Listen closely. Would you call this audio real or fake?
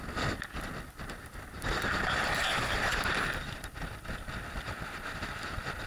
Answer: fake